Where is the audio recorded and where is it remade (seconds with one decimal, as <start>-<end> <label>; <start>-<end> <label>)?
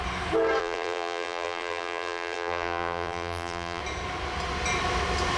0.0-0.6 recorded; 0.6-3.8 remade; 3.8-5.4 recorded